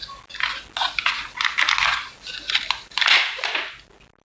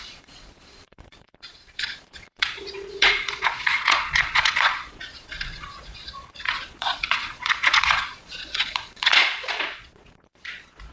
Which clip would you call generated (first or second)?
second